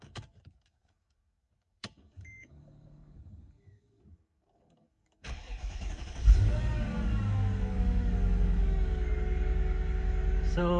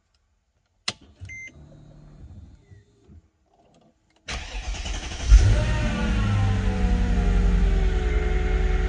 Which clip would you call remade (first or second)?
first